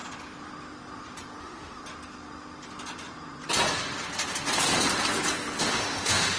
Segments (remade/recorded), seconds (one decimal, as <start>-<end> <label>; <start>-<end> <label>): 0.0-1.4 recorded; 1.4-1.8 remade; 1.8-5.6 recorded; 5.6-6.4 remade